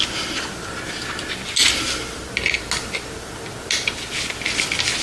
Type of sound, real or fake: real